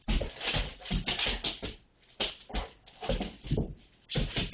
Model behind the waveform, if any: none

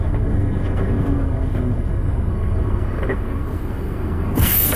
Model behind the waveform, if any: codec, SNAC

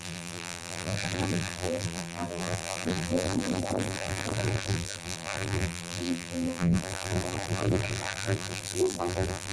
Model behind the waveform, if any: vocoder, BigVGAN v2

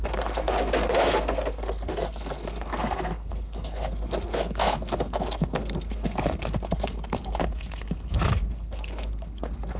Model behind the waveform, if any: codec, SNAC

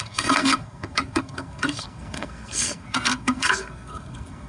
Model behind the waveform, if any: codec, SNAC